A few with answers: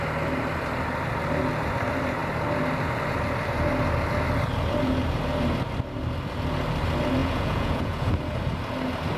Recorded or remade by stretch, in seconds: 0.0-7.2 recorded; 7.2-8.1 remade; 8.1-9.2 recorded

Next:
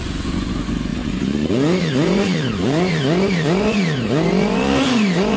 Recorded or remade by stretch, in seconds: 0.0-5.4 remade

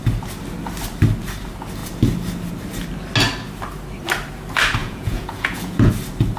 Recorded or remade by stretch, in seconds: 0.0-4.8 recorded; 4.8-5.9 remade; 5.9-6.4 recorded

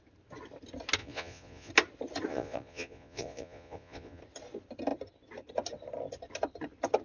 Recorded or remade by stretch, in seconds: 0.0-1.0 recorded; 1.0-1.7 remade; 1.7-2.3 recorded; 2.3-4.2 remade; 4.2-7.0 recorded

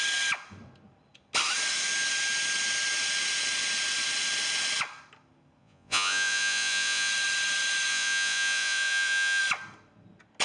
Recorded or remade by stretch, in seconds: 0.0-5.6 recorded; 5.6-7.1 remade; 7.1-7.9 recorded; 7.9-9.4 remade; 9.4-10.4 recorded